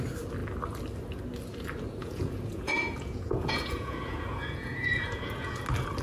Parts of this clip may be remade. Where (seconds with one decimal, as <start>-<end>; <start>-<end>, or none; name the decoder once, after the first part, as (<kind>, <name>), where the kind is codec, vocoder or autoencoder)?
2.0-5.6 (vocoder, Vocos)